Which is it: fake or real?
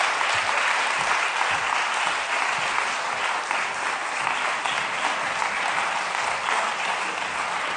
real